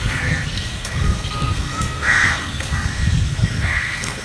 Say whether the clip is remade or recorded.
remade